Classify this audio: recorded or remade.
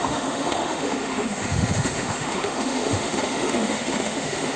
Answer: remade